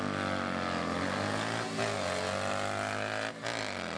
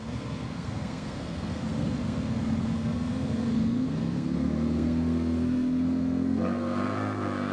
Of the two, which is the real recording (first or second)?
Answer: first